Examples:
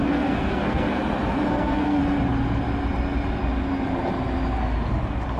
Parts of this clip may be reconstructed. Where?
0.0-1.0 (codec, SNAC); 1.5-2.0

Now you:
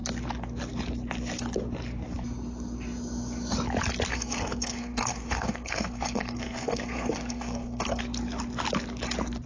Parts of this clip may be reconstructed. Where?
4.1-8.0 (codec, SNAC)

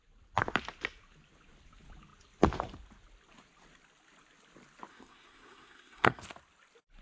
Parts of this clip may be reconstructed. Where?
4.9-6.2 (codec, SNAC)

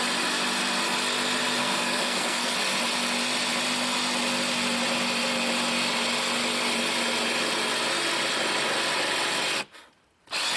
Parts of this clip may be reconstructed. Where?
1.6-2.5 (codec, SNAC)

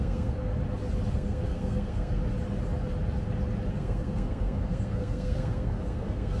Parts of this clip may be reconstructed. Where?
0.0-0.5 (codec, SNAC); 1.1-2.2; 3.7-6.4

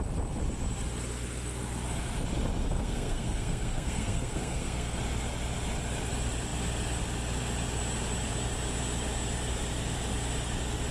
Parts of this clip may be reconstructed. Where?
2.6-5.0 (codec, SNAC)

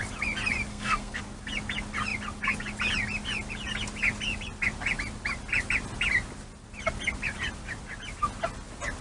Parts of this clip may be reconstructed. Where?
0.7-1.2 (codec, SNAC)

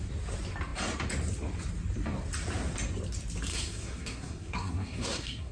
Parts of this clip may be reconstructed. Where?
3.5-5.5 (codec, SNAC)